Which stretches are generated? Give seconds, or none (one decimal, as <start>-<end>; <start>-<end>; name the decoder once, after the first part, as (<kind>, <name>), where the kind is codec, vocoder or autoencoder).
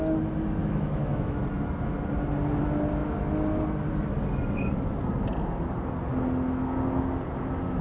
0.6-1.4 (autoencoder, DAC-VAE)